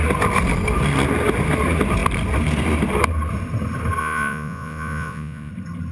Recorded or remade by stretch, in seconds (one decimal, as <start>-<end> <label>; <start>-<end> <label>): 0.0-4.0 recorded; 4.0-5.5 remade; 5.5-5.9 recorded